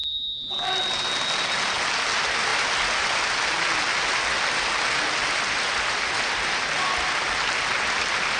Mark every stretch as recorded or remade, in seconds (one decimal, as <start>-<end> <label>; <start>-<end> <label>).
0.0-8.4 recorded